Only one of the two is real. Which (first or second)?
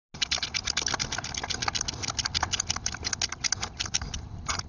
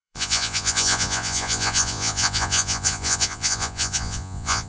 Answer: first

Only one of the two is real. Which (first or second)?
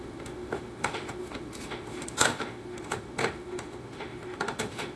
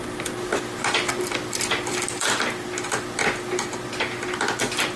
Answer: second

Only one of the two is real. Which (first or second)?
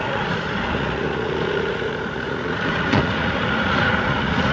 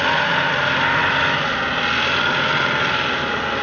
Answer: second